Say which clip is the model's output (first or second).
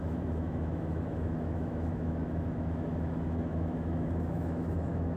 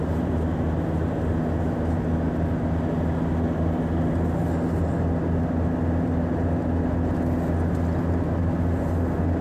first